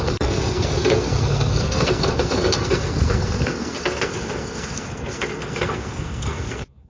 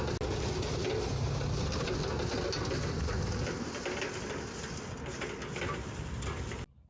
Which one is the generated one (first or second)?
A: first